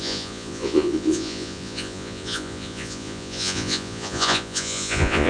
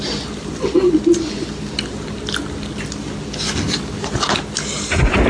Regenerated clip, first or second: first